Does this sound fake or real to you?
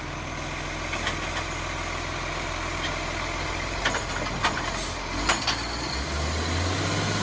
real